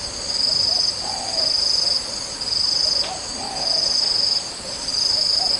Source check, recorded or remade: recorded